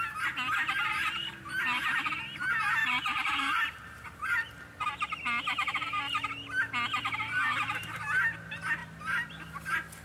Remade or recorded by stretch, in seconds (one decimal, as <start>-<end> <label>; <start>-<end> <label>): 0.0-0.6 recorded; 0.6-2.1 remade; 2.1-2.8 recorded; 2.8-4.2 remade; 4.2-8.8 recorded; 8.8-9.3 remade; 9.3-10.0 recorded